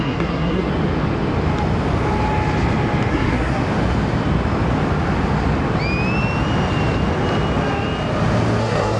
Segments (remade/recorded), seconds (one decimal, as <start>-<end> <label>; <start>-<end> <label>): 0.0-0.7 remade; 0.7-3.1 recorded; 3.1-3.6 remade; 3.6-8.6 recorded; 8.6-9.0 remade